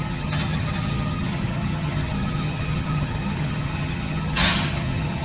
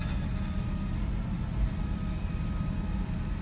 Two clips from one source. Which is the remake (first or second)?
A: first